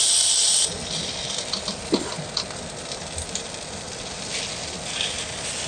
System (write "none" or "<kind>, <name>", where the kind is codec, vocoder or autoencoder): none